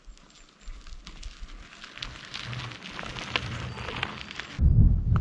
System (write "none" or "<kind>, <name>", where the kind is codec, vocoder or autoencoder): none